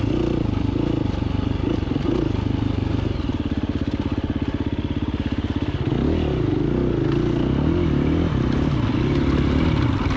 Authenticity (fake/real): real